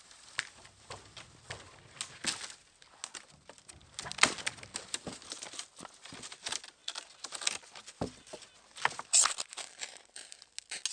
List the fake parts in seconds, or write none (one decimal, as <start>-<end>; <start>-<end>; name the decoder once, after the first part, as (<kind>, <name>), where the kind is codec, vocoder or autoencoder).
none